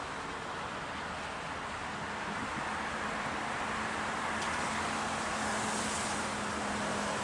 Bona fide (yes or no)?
yes